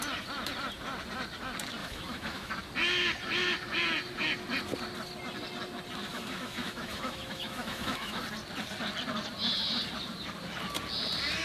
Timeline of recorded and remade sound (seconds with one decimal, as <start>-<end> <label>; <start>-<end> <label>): 0.0-1.8 recorded; 1.8-2.5 remade; 2.5-6.1 recorded; 6.1-8.2 remade; 8.2-11.4 recorded

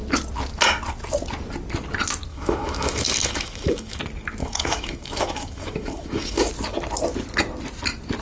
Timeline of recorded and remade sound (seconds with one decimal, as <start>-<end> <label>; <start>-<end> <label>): 0.0-2.3 recorded; 2.3-4.0 remade; 4.0-4.4 recorded; 4.4-6.5 remade; 6.5-8.2 recorded

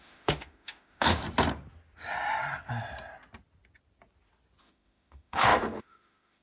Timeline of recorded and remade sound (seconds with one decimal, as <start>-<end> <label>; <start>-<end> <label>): 0.0-1.2 remade; 1.2-4.6 recorded; 4.6-6.4 remade

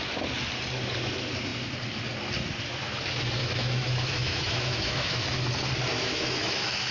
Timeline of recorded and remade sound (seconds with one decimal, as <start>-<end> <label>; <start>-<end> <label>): 0.0-3.4 recorded; 3.4-5.2 remade; 5.2-5.9 recorded; 5.9-6.9 remade

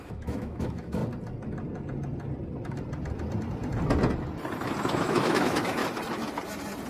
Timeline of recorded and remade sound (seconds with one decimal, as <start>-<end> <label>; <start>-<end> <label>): 0.0-1.0 remade; 1.0-5.0 recorded; 5.0-5.8 remade; 5.8-6.9 recorded

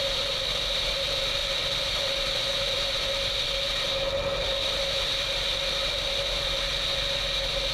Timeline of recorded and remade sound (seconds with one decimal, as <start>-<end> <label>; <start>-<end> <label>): 0.0-7.7 recorded

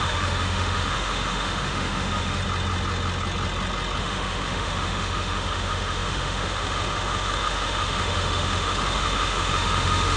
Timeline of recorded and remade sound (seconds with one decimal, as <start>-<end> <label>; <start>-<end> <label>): 0.0-2.4 remade; 2.4-4.0 recorded; 4.0-10.2 remade

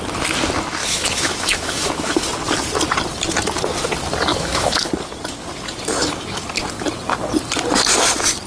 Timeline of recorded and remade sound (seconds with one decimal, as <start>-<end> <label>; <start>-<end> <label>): 0.0-0.8 recorded; 0.8-2.2 remade; 2.2-4.3 recorded; 4.3-4.9 remade; 4.9-8.5 recorded